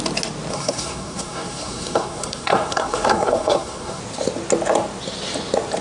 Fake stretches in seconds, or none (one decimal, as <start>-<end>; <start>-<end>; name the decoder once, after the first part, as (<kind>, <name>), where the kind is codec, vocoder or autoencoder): 0.5-4.0 (codec, SNAC)